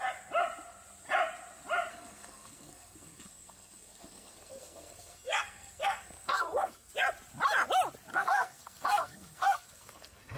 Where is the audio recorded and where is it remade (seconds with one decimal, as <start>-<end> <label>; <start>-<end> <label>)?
0.0-1.9 recorded; 1.9-6.9 remade; 6.9-8.1 recorded; 8.1-10.4 remade